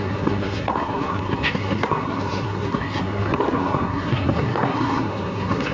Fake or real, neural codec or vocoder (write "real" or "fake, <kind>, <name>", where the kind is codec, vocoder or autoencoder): fake, codec, SNAC